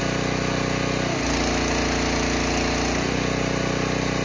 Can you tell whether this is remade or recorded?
recorded